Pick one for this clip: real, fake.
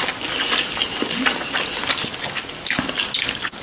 real